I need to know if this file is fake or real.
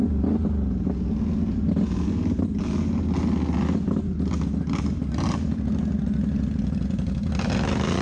real